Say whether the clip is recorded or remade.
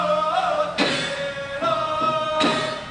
recorded